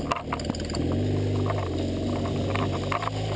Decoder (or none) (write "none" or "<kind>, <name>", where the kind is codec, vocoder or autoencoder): none